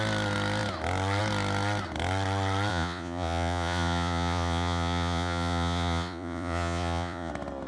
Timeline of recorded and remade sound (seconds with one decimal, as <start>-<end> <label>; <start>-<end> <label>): 0.0-2.7 recorded; 2.7-7.3 remade; 7.3-7.7 recorded